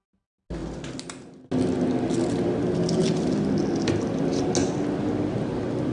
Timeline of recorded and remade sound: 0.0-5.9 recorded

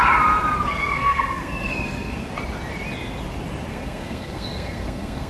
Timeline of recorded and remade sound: 0.0-0.7 recorded; 0.7-2.3 remade; 2.3-3.7 recorded; 3.7-5.3 remade

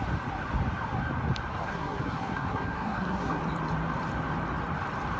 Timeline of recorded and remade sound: 0.0-1.5 recorded; 1.5-3.4 remade; 3.4-5.2 recorded

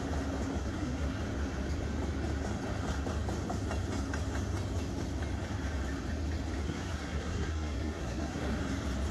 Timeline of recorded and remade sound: 0.0-0.6 recorded; 0.6-1.2 remade; 1.2-6.6 recorded; 6.6-8.6 remade; 8.6-9.1 recorded

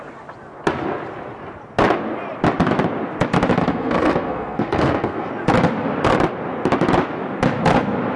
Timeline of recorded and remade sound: 0.0-3.6 recorded; 3.6-5.3 remade; 5.3-8.2 recorded